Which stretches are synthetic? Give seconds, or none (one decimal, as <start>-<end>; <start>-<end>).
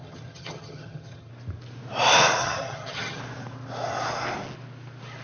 0.0-1.3; 2.4-3.2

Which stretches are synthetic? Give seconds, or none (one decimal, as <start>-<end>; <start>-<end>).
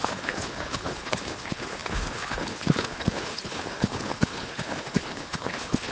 0.0-5.9